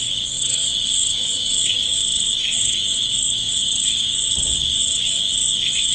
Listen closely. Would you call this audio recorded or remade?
remade